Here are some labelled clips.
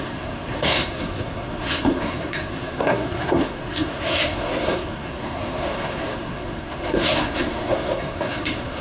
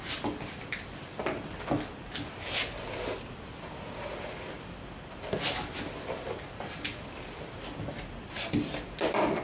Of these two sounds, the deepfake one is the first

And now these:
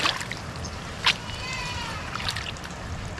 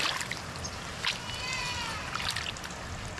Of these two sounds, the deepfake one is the first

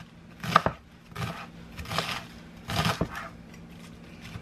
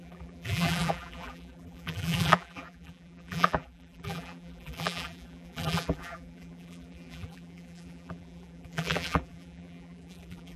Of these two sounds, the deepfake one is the second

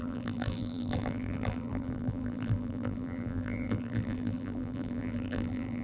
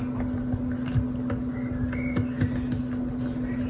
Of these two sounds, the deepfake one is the first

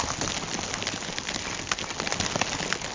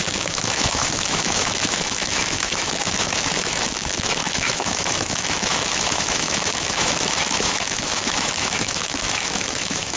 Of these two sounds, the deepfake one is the second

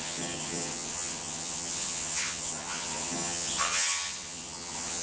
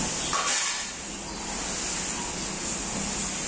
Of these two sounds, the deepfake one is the first